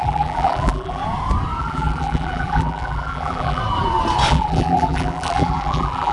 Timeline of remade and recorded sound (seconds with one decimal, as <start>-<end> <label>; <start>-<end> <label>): 0.0-1.0 remade; 1.0-1.6 recorded; 1.6-3.6 remade; 3.6-4.3 recorded; 4.3-6.1 remade